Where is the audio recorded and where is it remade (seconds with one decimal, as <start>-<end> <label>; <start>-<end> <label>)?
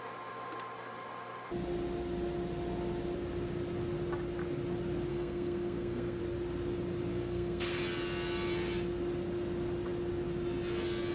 0.0-5.1 recorded; 5.1-6.2 remade; 6.2-7.1 recorded; 7.1-7.8 remade; 7.8-11.1 recorded